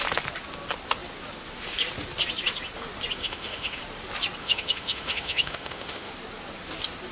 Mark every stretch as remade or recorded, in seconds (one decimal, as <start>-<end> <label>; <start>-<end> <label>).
0.0-3.2 recorded; 3.2-3.8 remade; 3.8-4.4 recorded; 4.4-6.1 remade; 6.1-7.1 recorded